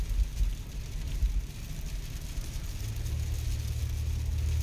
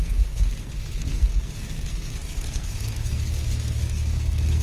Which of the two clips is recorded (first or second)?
first